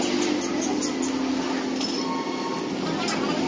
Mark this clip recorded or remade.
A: recorded